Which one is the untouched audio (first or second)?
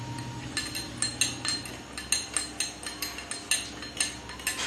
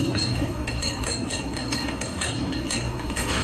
first